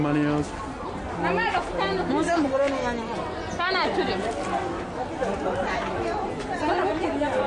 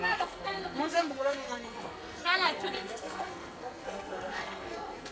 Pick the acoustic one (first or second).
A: first